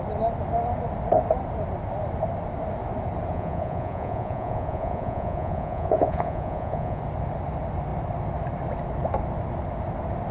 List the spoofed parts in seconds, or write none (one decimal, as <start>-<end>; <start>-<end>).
3.3-7.0